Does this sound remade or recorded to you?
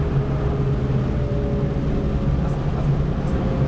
recorded